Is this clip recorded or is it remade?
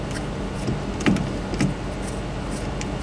recorded